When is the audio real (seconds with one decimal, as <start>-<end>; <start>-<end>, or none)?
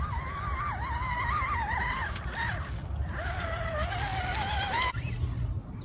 0.0-5.8